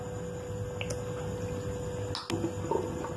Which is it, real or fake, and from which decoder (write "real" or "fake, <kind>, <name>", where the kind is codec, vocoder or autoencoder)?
real